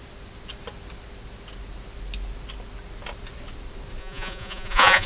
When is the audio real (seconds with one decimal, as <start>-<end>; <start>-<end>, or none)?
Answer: 0.0-4.0